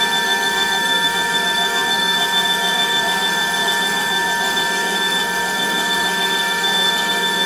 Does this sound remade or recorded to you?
remade